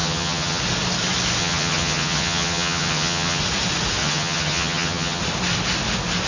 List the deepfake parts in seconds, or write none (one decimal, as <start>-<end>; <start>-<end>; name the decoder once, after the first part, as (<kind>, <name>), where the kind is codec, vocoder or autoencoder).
0.0-0.6 (vocoder, HiFi-GAN); 1.4-3.4; 4.0-5.2